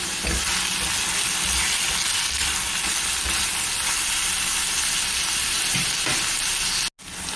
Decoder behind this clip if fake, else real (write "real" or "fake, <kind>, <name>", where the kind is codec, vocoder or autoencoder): real